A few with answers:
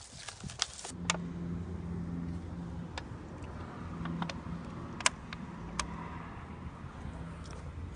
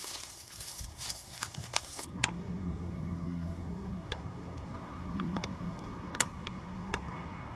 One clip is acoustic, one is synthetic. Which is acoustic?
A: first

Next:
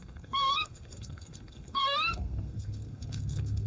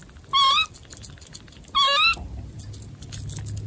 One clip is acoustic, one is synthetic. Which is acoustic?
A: second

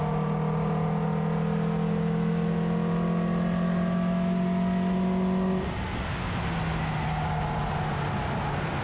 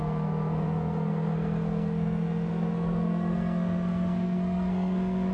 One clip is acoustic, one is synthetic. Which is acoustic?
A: first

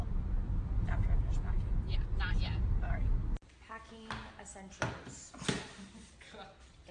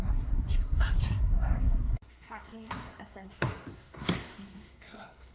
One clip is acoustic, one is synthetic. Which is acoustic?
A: first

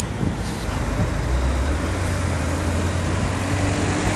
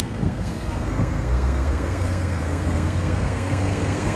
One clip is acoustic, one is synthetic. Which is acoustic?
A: first